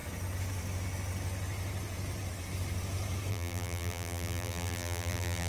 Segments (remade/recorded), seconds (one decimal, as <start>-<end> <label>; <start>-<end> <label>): 0.0-3.3 recorded; 3.3-5.5 remade